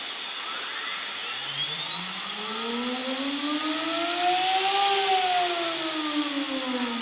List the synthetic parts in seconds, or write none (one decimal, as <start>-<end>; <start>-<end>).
1.2-1.9